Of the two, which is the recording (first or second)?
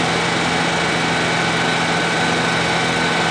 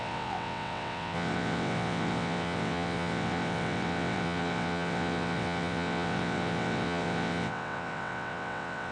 first